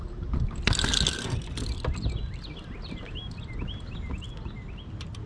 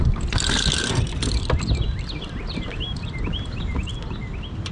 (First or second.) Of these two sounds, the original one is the first